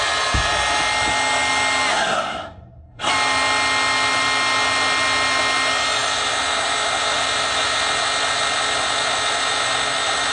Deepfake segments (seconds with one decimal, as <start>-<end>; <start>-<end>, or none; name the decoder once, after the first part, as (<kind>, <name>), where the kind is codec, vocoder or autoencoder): 1.9-3.1 (codec, SNAC)